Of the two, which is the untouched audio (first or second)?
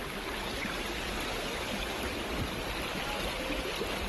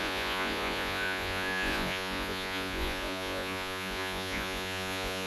first